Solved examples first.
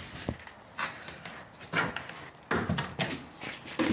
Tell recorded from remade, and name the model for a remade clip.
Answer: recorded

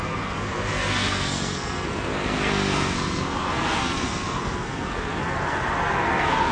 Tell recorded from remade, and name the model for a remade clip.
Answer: remade, codec, SNAC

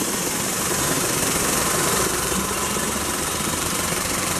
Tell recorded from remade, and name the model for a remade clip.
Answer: remade, vocoder, BigVGAN v2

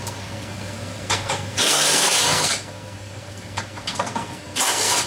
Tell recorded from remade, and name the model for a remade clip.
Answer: remade, codec, SNAC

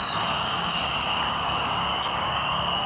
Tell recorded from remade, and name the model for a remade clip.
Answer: remade, codec, DAC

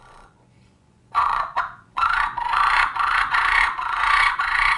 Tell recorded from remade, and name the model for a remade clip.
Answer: remade, vocoder, Vocos